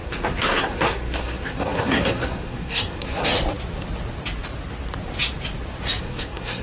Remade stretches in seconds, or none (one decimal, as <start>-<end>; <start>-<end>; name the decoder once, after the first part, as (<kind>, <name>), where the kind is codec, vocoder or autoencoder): 0.0-3.3 (codec, SNAC); 6.0-6.6